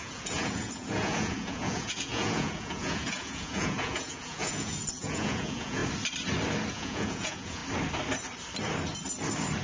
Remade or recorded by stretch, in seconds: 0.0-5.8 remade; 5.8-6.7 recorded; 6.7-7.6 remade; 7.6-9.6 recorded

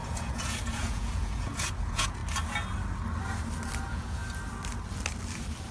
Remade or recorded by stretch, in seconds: 0.0-2.2 remade; 2.2-3.8 recorded; 3.8-4.2 remade; 4.2-5.7 recorded

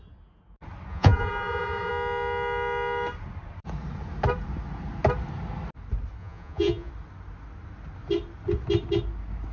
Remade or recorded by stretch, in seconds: 0.0-0.9 recorded; 0.9-1.9 remade; 1.9-6.2 recorded; 6.2-6.9 remade; 6.9-9.5 recorded

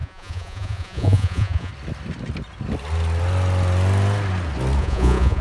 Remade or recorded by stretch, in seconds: 0.0-1.7 remade; 1.7-4.8 recorded; 4.8-5.4 remade